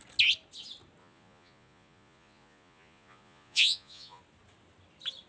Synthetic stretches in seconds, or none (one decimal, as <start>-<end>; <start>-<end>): 1.0-4.2